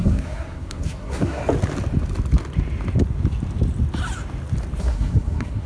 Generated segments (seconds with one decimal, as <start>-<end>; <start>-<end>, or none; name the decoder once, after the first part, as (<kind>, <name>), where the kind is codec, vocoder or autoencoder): 0.0-1.4 (codec, SNAC); 4.8-5.7